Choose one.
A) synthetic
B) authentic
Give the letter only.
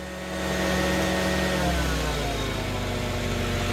B